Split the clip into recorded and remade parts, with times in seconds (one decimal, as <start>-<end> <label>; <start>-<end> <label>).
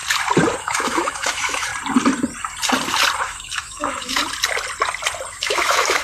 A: 0.0-0.6 recorded; 0.6-1.7 remade; 1.7-3.2 recorded; 3.2-4.2 remade; 4.2-5.3 recorded; 5.3-6.0 remade